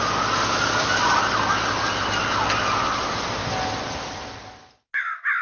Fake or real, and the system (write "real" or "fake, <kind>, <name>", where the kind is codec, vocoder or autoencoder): real